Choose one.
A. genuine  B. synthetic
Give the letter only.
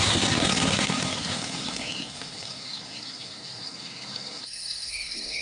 B